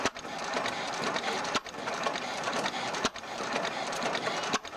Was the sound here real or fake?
real